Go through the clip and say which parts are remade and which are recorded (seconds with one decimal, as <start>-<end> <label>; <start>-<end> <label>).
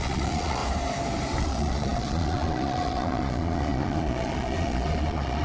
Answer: 0.0-0.6 remade; 0.6-1.4 recorded; 1.4-5.4 remade